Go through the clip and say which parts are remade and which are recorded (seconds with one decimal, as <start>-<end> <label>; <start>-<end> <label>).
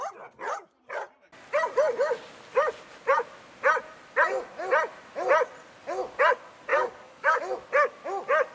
0.0-6.7 recorded; 6.7-7.4 remade; 7.4-8.5 recorded